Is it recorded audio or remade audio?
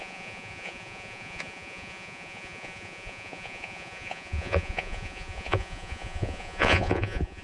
remade